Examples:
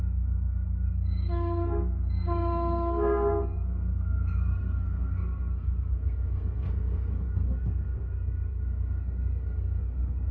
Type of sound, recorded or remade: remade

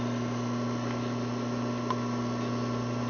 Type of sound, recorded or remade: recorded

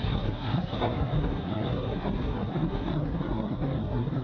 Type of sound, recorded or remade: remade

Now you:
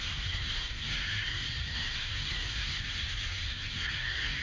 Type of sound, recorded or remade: remade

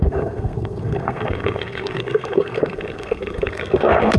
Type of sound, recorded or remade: remade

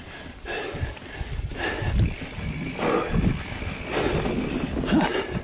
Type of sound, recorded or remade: recorded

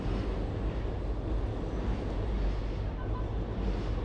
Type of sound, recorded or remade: recorded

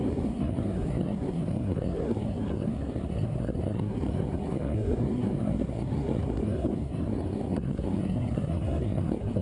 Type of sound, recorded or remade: remade